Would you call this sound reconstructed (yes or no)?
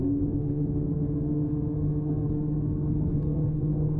yes